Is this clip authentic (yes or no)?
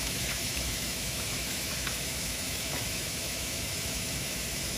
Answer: no